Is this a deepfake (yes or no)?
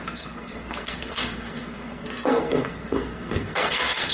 yes